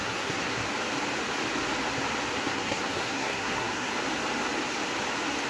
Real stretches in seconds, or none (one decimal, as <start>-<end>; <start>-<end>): 0.6-2.4; 3.9-5.5